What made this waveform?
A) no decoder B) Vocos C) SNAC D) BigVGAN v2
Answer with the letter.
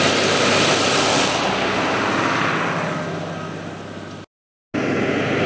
A